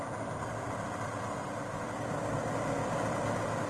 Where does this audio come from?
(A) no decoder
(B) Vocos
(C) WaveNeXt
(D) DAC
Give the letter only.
A